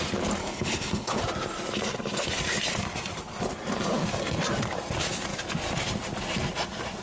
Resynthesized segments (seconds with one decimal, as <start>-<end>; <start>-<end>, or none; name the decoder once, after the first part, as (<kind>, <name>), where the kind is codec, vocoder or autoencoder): 0.4-1.2 (codec, HILCodec)